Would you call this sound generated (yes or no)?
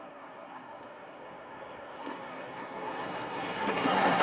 yes